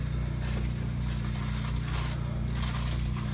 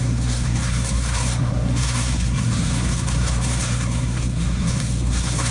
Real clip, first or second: first